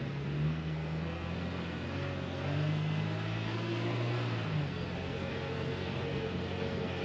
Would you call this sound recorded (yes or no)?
no